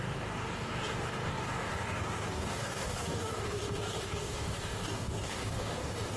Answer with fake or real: fake